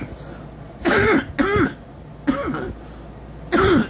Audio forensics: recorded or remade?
recorded